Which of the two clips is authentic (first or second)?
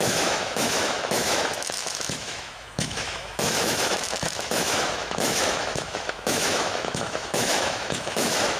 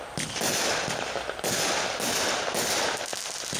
second